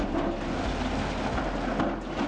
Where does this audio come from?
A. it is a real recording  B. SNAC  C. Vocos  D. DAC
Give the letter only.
A